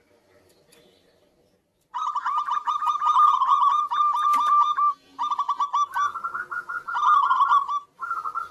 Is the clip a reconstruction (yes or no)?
no